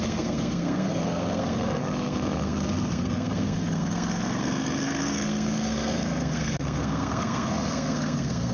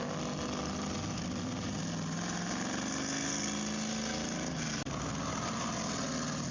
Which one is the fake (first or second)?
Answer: first